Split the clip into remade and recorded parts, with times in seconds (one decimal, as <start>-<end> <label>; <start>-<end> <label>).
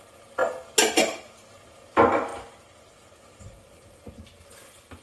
0.0-5.0 recorded